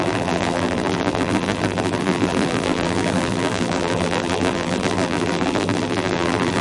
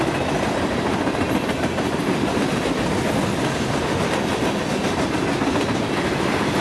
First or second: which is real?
second